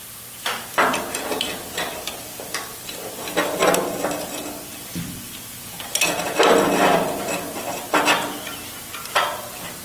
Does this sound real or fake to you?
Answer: real